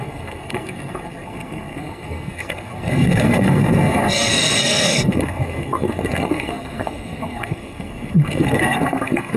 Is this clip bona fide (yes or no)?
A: no